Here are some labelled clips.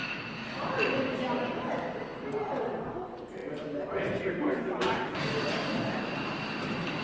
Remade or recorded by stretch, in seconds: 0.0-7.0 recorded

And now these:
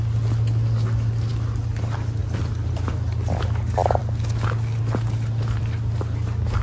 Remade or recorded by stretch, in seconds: 0.0-6.6 recorded